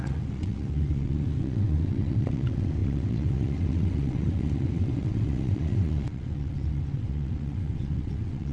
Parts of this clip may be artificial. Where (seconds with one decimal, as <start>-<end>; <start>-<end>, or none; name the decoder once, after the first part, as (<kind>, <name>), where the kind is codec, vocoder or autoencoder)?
0.0-8.5 (vocoder, WaveNeXt)